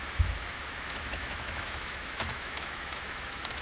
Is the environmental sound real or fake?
fake